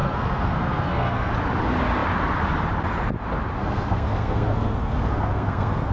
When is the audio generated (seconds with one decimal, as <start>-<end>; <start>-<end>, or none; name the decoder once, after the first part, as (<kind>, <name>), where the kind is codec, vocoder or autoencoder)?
0.0-1.3 (codec, SNAC); 3.6-5.9